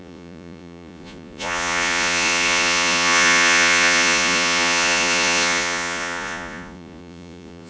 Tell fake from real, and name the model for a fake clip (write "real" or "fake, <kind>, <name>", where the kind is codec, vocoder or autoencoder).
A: fake, vocoder, Vocos